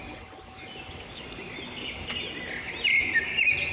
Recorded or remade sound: recorded